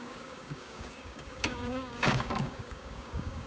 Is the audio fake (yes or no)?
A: yes